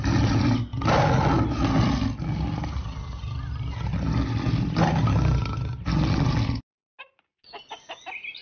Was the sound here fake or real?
real